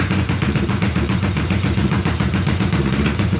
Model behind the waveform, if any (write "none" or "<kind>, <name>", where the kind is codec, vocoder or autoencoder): vocoder, Vocos